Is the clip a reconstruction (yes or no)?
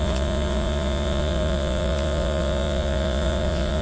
yes